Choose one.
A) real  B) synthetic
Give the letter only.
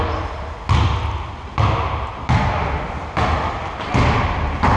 A